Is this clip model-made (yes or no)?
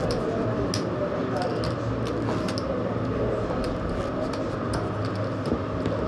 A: no